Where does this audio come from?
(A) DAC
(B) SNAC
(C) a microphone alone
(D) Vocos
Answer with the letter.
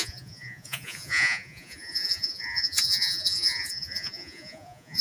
D